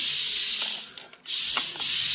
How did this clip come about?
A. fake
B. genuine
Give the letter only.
B